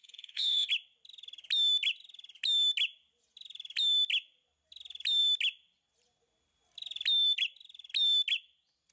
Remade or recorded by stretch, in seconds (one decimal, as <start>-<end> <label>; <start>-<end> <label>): 0.0-0.7 remade; 0.7-8.9 recorded